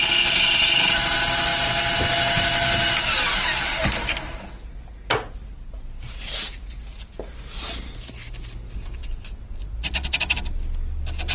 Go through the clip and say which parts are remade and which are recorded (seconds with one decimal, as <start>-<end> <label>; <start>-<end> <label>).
0.0-11.3 recorded